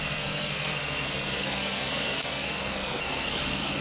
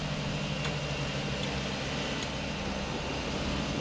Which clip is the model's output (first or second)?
first